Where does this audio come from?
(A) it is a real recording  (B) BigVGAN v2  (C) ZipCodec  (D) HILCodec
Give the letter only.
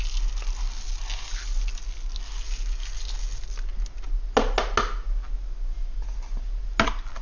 A